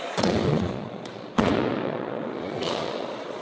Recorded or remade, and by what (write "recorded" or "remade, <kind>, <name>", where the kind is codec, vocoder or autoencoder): remade, vocoder, Vocos